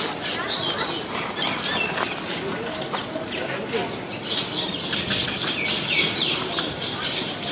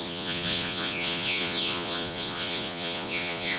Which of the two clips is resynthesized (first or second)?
second